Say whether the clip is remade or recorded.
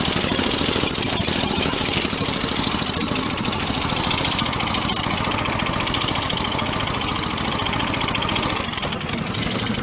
recorded